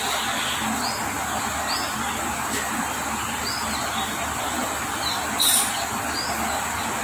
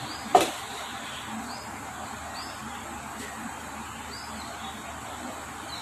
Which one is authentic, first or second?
first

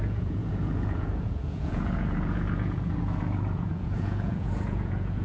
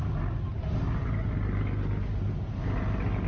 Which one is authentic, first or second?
second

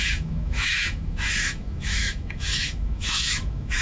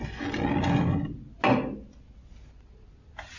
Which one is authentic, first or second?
second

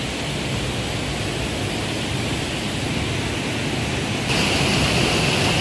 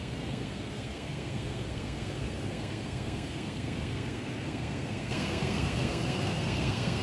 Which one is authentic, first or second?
first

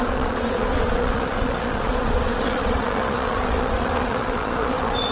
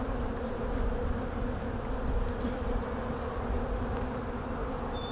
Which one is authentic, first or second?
second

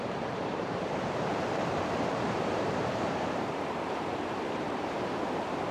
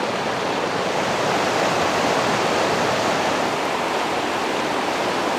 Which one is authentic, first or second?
second